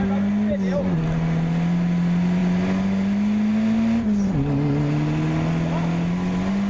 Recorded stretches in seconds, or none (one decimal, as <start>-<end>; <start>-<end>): 0.0-6.7

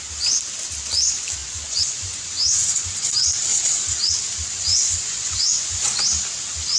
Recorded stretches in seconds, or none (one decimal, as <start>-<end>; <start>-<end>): 0.0-1.4; 3.1-3.5; 4.1-4.5; 5.9-6.8

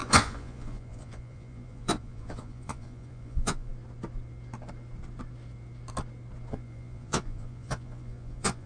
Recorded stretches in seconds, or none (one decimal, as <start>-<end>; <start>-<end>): 3.7-6.5

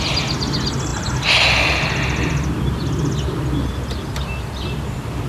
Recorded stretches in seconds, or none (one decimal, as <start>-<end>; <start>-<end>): 0.0-5.3

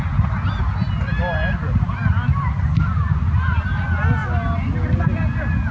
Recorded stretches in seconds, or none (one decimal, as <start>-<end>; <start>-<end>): 0.0-5.7

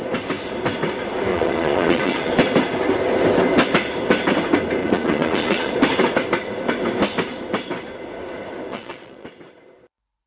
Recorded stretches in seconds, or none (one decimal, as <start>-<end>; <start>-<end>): 0.0-1.3; 2.3-4.8; 5.7-8.7; 9.3-10.3

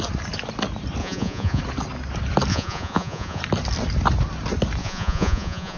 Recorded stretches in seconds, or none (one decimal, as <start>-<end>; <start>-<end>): 0.0-1.0; 1.6-2.5; 3.4-4.8